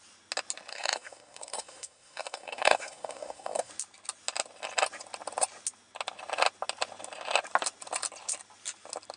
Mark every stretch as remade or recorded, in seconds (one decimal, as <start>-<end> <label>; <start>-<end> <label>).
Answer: 0.0-0.7 recorded; 0.7-3.7 remade; 3.7-9.2 recorded